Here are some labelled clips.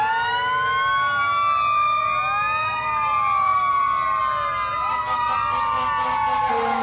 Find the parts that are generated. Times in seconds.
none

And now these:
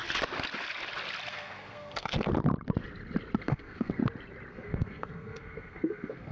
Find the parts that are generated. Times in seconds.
1.3-2.3 (codec, SNAC); 3.4-4.0; 4.5-6.3

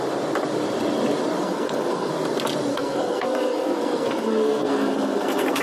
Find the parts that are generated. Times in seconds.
1.4-2.1 (codec, SNAC); 2.7-5.6

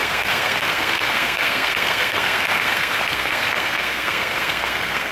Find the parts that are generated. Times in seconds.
0.0-5.1 (codec, SNAC)

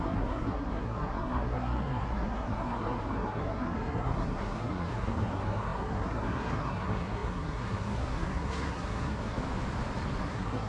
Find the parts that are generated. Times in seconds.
0.0-9.4 (codec, SNAC); 10.2-10.7

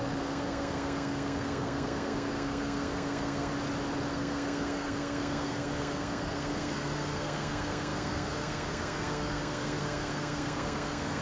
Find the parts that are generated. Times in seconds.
0.0-3.5 (codec, SNAC); 4.1-11.2